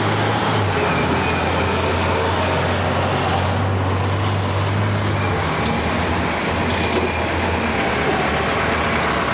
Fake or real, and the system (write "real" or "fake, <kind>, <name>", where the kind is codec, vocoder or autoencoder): real